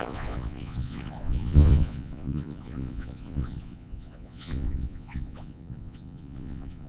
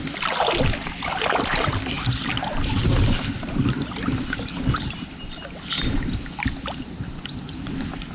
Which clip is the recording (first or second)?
second